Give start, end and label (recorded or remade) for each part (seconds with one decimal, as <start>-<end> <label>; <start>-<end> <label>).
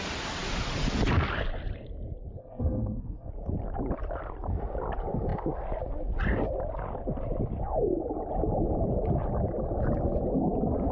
0.0-2.4 recorded; 2.4-3.3 remade; 3.3-10.9 recorded